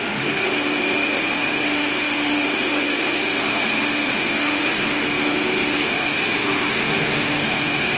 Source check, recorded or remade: remade